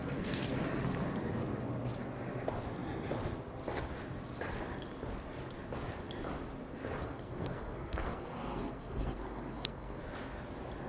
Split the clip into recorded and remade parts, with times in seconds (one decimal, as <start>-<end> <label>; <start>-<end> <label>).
0.0-0.5 remade; 0.5-7.0 recorded; 7.0-10.0 remade; 10.0-10.9 recorded